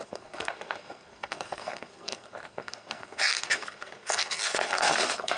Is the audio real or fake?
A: fake